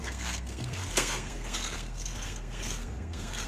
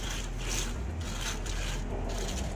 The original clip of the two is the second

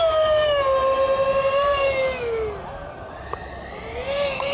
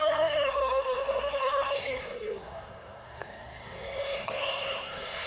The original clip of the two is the first